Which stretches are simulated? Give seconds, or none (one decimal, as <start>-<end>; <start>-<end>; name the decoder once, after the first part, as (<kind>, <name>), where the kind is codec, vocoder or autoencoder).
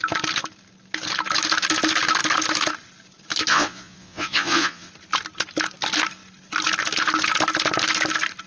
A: 3.5-4.9 (vocoder, Vocos)